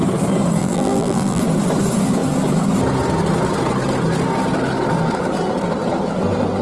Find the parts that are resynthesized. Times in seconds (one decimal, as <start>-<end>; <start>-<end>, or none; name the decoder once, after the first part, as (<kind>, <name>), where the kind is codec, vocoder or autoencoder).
0.6-1.4 (vocoder, BigVGAN v2)